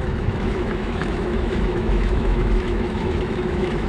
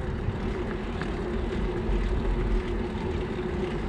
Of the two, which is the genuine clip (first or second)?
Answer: second